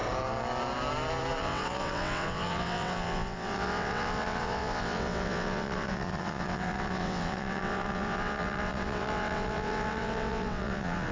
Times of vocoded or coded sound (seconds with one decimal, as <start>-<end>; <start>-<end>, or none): 1.4-11.1